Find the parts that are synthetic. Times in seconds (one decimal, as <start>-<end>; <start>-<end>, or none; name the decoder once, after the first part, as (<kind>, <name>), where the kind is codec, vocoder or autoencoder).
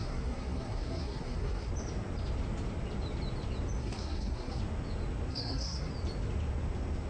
0.0-1.7 (codec, SNAC); 3.8-4.6; 5.3-5.9